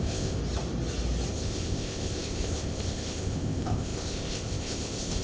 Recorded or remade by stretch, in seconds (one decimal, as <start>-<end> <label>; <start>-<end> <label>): 0.0-0.4 remade; 0.4-1.3 recorded; 1.3-5.2 remade